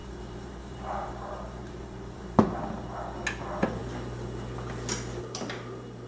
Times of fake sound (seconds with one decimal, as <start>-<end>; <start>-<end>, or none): 0.0-2.6